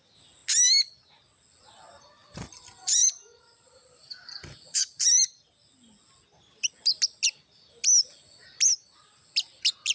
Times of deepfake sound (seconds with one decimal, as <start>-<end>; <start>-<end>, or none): 2.2-5.5